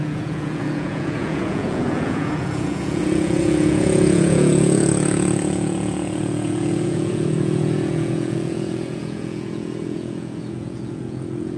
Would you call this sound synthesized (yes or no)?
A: yes